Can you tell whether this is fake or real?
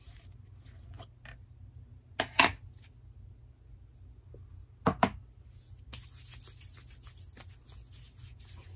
real